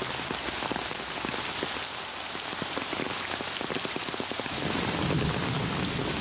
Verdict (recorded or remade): recorded